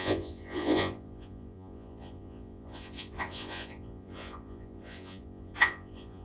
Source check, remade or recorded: remade